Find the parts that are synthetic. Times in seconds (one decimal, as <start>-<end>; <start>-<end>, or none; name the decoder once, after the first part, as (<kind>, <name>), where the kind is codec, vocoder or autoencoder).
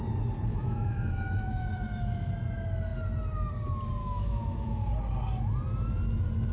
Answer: 0.5-2.3 (autoencoder, DAC-VAE); 4.0-4.9